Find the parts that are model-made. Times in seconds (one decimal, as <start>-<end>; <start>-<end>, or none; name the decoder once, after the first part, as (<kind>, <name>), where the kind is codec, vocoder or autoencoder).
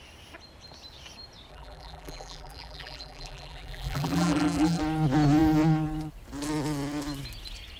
1.5-4.8 (vocoder, BigVGAN v2)